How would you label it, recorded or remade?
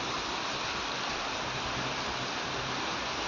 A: recorded